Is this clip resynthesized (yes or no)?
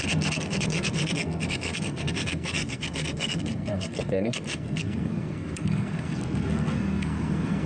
yes